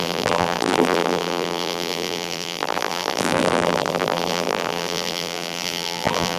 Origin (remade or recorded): remade